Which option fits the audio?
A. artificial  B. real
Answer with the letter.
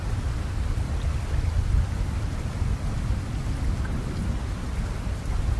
B